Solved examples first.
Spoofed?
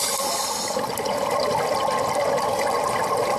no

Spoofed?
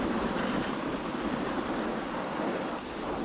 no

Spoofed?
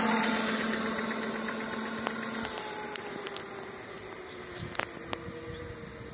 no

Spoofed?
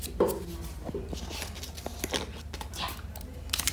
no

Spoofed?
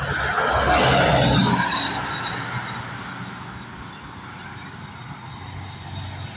no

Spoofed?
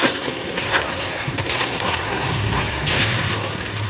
yes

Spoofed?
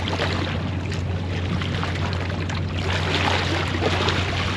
no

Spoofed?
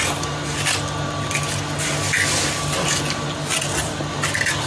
no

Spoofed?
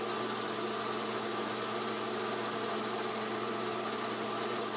no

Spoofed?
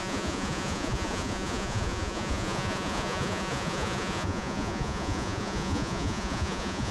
yes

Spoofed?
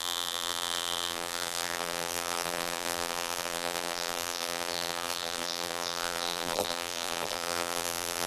yes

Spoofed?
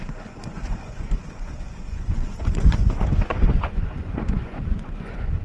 yes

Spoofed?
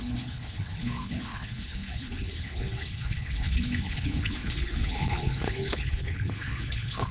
yes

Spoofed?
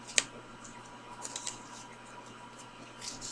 no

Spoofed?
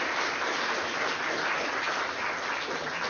no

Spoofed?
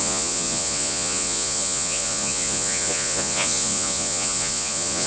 yes